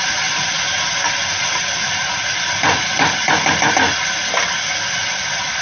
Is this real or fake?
real